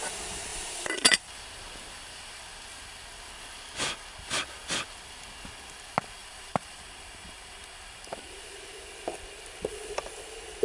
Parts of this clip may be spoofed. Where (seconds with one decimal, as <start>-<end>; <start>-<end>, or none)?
0.5-2.4; 6.2-8.7